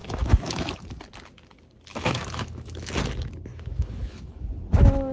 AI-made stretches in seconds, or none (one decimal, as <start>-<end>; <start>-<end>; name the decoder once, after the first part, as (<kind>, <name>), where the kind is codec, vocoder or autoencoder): 0.0-0.7 (autoencoder, DAC-VAE); 1.9-2.9; 3.5-4.5